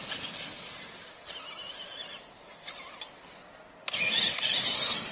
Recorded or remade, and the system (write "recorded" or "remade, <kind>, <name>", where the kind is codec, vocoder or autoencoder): remade, vocoder, BigVGAN v2